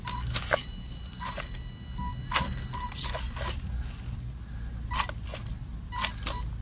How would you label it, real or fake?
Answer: real